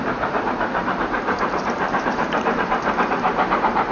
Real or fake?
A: fake